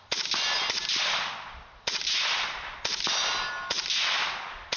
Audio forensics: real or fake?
real